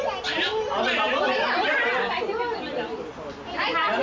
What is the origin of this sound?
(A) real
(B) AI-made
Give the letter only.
A